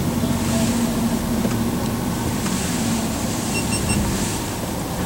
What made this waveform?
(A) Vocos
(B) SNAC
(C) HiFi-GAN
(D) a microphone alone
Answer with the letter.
D